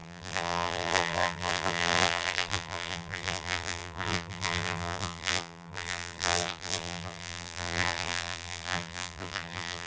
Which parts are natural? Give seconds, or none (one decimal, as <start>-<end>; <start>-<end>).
none